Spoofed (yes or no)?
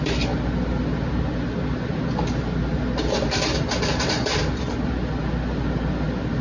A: no